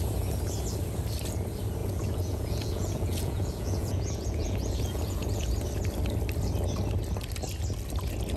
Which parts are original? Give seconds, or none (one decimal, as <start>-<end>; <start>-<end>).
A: 0.0-1.8; 5.5-8.4